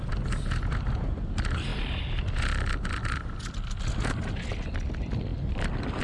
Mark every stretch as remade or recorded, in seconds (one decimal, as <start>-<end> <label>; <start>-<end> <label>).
0.0-6.0 recorded